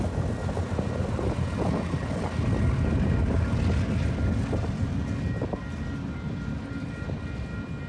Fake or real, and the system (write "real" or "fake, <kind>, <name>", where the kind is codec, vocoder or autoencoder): real